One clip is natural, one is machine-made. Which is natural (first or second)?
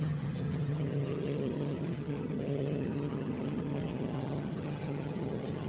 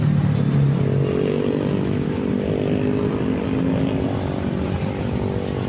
second